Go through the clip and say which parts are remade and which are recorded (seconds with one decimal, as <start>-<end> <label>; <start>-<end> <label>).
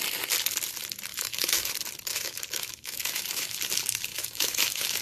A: 0.0-1.1 recorded; 1.1-1.7 remade; 1.7-2.1 recorded; 2.1-3.6 remade; 3.6-4.1 recorded; 4.1-5.0 remade